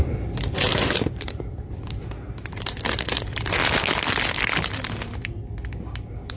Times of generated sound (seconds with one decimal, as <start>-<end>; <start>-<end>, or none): 0.0-3.6; 5.8-6.4